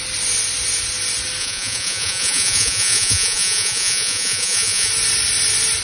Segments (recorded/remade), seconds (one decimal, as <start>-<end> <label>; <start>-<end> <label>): 0.0-1.4 recorded; 1.4-4.9 remade; 4.9-5.8 recorded